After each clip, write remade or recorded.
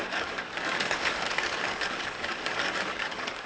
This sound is remade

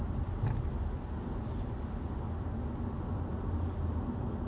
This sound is recorded